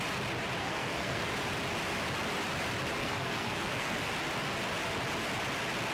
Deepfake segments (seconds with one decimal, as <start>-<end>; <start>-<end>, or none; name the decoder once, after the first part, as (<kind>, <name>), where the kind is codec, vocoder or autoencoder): 0.6-1.3 (codec, SNAC); 3.0-4.1